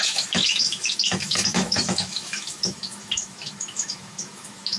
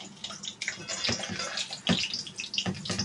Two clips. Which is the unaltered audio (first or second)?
second